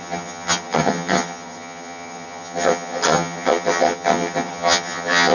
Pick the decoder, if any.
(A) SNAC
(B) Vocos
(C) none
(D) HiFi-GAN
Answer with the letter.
D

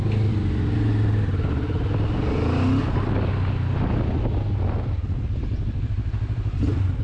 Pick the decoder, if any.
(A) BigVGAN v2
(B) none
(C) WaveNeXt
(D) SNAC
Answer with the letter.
B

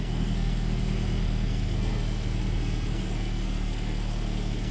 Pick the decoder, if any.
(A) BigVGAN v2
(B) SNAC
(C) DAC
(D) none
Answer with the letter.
B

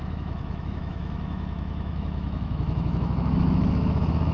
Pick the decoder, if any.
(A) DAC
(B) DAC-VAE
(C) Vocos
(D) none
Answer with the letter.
B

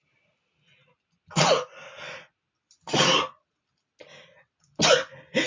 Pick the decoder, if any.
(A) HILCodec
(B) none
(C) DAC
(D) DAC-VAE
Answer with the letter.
B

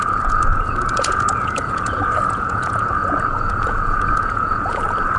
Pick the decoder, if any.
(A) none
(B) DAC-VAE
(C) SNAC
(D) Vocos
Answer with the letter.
D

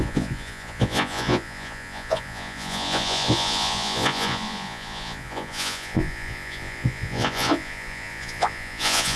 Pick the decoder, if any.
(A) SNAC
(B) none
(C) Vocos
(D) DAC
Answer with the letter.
C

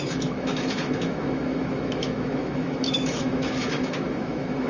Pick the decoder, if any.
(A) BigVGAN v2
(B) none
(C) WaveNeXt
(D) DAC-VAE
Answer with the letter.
D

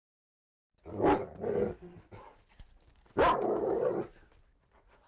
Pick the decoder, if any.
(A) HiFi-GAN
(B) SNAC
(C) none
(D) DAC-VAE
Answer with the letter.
C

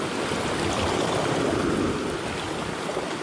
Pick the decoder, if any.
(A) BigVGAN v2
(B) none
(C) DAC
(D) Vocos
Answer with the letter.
B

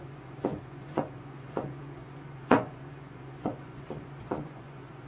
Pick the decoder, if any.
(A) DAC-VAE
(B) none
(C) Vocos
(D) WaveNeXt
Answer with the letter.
C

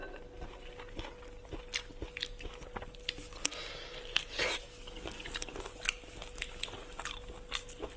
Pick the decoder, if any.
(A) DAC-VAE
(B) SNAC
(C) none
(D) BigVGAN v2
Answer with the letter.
C